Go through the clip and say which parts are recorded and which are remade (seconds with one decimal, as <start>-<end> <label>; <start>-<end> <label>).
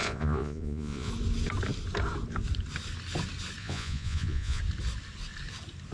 0.0-1.1 remade; 1.1-3.6 recorded; 3.6-4.6 remade; 4.6-5.9 recorded